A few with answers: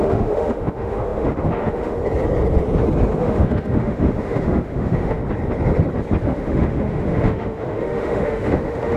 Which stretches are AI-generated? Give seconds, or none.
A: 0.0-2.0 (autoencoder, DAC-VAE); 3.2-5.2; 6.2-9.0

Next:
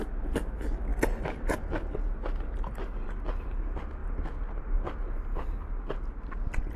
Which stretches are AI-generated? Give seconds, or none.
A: none

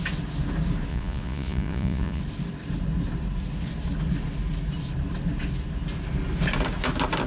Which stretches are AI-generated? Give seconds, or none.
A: 0.9-2.2 (vocoder, Vocos)

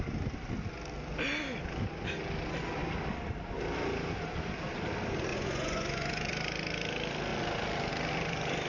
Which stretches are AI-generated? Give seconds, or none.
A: 5.3-6.3 (vocoder, Vocos)

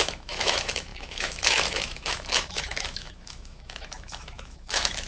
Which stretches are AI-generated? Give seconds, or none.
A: 0.0-5.1 (autoencoder, DAC-VAE)